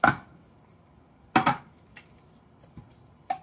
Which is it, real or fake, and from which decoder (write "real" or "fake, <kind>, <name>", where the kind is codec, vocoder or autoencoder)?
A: real